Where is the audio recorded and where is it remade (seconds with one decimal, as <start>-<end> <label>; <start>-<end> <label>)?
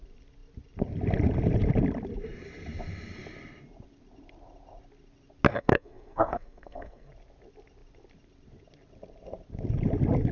0.0-5.5 recorded; 5.5-7.1 remade; 7.1-10.3 recorded